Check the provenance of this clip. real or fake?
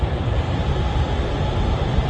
real